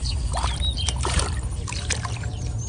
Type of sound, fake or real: fake